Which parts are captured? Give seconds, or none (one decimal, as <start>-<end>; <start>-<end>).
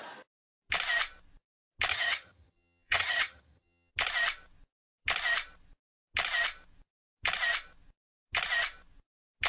0.0-1.9; 3.9-9.5